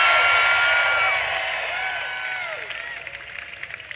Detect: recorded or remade recorded